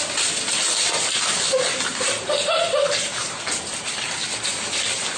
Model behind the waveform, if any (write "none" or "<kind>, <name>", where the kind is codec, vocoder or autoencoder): none